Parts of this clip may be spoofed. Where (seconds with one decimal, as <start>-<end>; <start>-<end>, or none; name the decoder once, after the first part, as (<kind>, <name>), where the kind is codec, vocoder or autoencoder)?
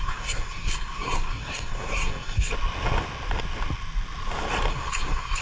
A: 0.0-2.5 (codec, SNAC); 4.7-5.4